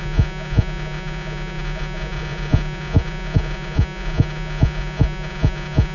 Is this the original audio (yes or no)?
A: no